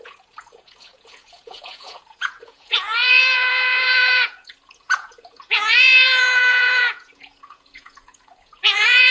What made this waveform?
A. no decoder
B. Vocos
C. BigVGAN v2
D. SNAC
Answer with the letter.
B